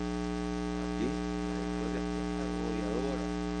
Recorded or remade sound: recorded